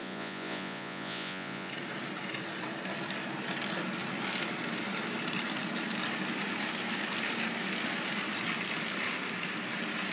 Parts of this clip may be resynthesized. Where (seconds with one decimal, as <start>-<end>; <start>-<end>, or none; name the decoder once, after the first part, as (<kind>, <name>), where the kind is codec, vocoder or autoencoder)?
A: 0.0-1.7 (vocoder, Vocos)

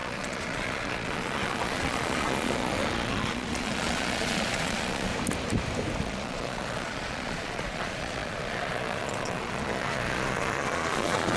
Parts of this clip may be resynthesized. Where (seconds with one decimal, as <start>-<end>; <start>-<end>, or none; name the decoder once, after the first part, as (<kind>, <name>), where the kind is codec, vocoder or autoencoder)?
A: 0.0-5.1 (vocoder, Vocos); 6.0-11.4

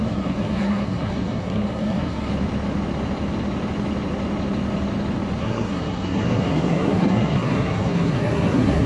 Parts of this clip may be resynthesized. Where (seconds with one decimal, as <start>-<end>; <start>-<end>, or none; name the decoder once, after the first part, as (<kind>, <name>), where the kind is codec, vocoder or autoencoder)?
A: 0.0-2.3 (codec, SNAC); 5.4-8.9

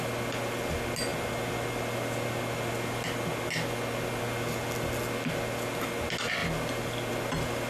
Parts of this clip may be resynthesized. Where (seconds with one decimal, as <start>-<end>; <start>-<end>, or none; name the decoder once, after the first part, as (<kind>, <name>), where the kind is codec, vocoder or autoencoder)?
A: none

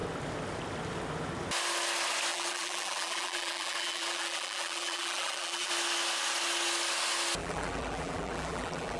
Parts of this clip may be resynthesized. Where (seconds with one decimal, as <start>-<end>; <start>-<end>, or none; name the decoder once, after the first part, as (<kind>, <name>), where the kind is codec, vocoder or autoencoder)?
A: 2.3-5.7 (vocoder, BigVGAN v2); 7.4-9.0